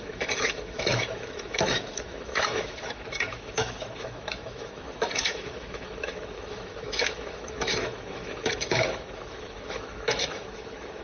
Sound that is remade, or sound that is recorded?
remade